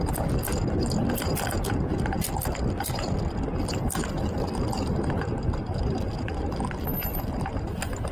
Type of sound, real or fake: real